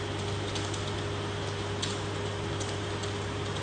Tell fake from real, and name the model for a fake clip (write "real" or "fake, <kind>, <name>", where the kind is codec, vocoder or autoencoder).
real